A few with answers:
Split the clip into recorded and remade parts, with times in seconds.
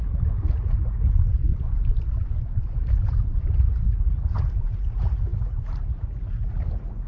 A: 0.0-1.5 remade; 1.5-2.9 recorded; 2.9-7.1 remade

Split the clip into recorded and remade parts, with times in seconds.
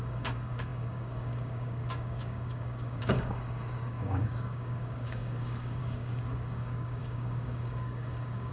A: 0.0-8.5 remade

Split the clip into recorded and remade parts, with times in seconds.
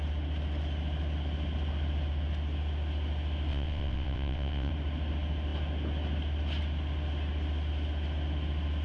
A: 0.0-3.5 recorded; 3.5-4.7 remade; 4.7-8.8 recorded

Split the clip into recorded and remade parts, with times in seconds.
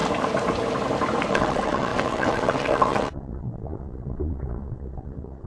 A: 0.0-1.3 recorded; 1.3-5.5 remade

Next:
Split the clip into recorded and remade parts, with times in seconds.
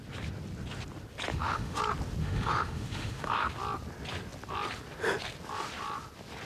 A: 0.0-1.3 recorded; 1.3-1.8 remade; 1.8-2.2 recorded; 2.2-3.5 remade; 3.5-6.5 recorded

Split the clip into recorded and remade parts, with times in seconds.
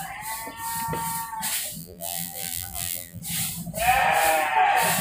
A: 0.0-1.8 recorded; 1.8-3.2 remade; 3.2-5.0 recorded